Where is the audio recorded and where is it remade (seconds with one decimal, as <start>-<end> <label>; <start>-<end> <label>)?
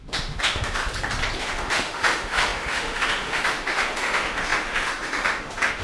0.0-0.8 remade; 0.8-1.4 recorded; 1.4-5.8 remade